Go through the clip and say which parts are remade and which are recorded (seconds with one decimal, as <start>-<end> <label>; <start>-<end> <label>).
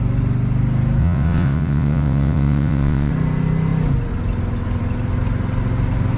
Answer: 0.0-1.0 recorded; 1.0-3.1 remade; 3.1-6.2 recorded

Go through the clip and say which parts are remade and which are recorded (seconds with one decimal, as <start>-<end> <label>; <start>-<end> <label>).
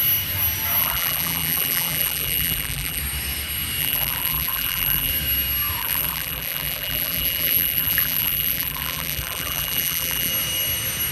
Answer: 0.0-0.8 recorded; 0.8-3.0 remade; 3.0-3.8 recorded; 3.8-5.1 remade; 5.1-5.8 recorded; 5.8-10.3 remade; 10.3-11.1 recorded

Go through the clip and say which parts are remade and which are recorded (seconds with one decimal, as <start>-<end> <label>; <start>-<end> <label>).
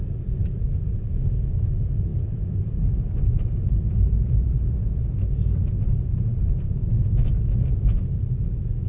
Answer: 0.0-2.1 recorded; 2.1-5.1 remade; 5.1-8.9 recorded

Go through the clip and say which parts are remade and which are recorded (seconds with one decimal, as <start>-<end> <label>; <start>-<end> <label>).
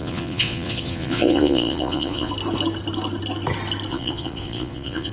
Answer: 0.0-2.3 remade; 2.3-3.9 recorded; 3.9-5.1 remade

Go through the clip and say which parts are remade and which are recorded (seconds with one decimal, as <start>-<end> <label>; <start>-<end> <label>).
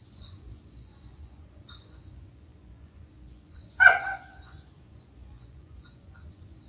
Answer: 0.0-6.7 remade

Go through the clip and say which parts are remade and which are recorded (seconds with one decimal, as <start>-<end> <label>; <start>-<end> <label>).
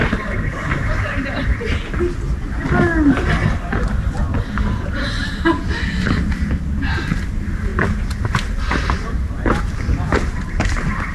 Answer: 0.0-11.1 recorded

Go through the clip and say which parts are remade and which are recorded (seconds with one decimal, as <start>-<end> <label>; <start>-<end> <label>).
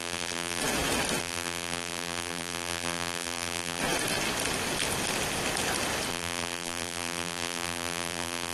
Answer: 0.0-0.6 remade; 0.6-1.2 recorded; 1.2-3.8 remade; 3.8-6.1 recorded; 6.1-8.5 remade